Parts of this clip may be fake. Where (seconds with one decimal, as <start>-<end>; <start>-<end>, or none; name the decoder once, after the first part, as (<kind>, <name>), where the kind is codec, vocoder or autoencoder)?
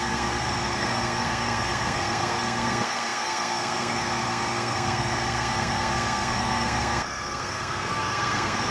0.0-8.7 (codec, SNAC)